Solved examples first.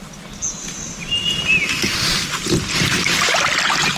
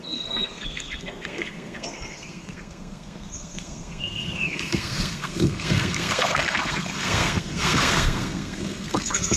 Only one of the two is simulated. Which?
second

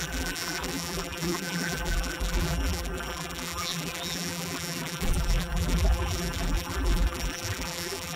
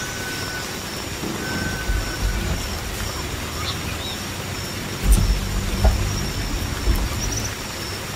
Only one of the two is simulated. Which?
first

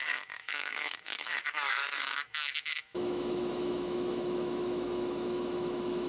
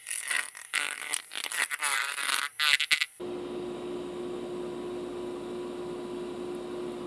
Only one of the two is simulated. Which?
first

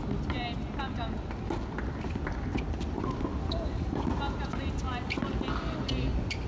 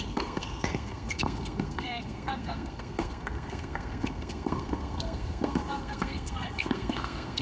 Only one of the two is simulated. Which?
second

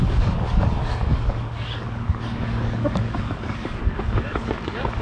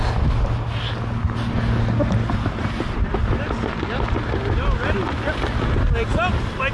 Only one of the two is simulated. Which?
first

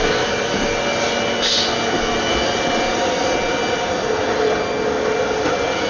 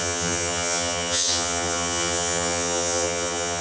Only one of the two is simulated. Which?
second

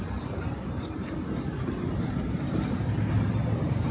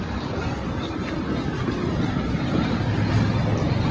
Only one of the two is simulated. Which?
first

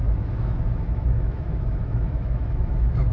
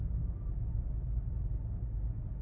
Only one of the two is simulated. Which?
first